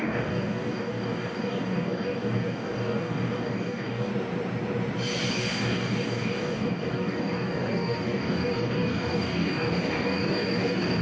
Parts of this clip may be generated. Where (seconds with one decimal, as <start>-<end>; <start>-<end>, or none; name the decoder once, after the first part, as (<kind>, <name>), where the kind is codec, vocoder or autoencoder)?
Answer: 0.0-4.1 (codec, DAC); 5.3-11.0